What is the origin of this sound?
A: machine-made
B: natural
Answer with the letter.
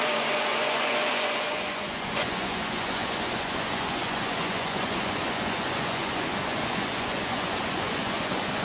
A